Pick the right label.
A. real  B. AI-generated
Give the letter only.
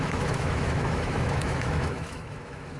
B